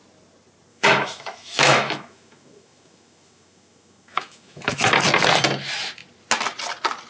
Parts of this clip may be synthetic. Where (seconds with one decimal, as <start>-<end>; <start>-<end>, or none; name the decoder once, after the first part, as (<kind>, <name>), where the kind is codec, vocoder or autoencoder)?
0.7-5.0 (autoencoder, DAC-VAE)